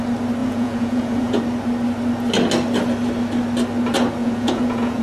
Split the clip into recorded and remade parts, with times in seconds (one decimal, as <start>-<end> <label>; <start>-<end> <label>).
0.0-0.4 recorded; 0.4-1.4 remade; 1.4-4.2 recorded; 4.2-5.0 remade